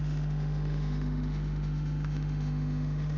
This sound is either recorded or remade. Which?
remade